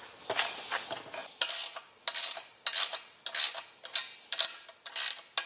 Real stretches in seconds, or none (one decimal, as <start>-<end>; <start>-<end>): 0.0-5.5